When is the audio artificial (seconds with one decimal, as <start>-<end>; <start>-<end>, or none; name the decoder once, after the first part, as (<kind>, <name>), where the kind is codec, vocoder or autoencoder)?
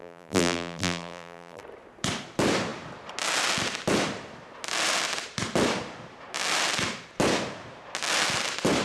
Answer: 0.0-1.6 (vocoder, BigVGAN v2)